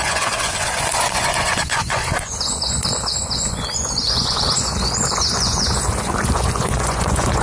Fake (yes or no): yes